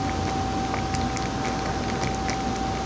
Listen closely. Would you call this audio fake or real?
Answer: real